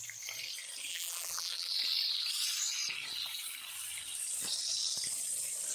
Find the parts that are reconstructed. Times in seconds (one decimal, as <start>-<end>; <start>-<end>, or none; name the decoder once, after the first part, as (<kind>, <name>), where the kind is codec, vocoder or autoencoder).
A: 0.9-1.7 (vocoder, BigVGAN v2)